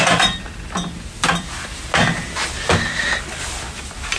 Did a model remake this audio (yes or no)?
no